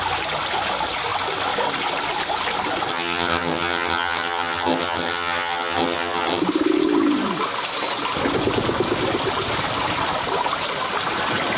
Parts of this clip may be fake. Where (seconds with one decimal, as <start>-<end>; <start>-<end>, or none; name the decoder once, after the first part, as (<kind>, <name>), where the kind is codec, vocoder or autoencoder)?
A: 2.9-6.4 (vocoder, HiFi-GAN)

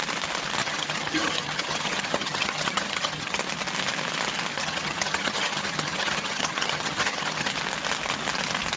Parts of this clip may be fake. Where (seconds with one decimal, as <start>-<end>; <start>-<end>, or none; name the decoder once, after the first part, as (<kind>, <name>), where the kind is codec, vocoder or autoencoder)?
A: 0.6-3.4 (vocoder, HiFi-GAN); 4.5-7.5

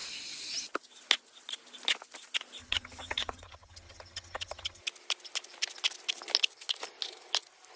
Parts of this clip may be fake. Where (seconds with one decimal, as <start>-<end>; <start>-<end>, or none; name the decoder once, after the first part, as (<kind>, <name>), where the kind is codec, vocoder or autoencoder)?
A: 2.6-4.8 (vocoder, HiFi-GAN)

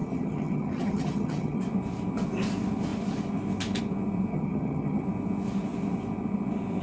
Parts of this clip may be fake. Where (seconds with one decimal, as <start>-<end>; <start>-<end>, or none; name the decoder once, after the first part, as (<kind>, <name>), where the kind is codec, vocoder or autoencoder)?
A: 0.0-1.6 (vocoder, HiFi-GAN); 4.3-5.0